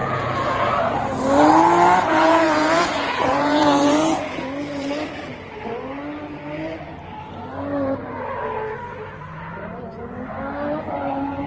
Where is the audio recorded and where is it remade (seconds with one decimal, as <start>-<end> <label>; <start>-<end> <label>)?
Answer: 0.0-0.7 remade; 0.7-2.1 recorded; 2.1-4.2 remade; 4.2-11.5 recorded